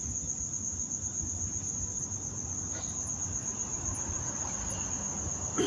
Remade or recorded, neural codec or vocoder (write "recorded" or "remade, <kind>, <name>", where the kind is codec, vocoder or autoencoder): recorded